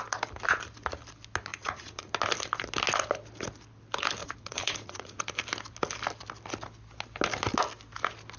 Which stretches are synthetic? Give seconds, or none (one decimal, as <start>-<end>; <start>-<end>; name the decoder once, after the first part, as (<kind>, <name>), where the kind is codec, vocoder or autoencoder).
1.5-2.1 (vocoder, Vocos); 4.2-5.2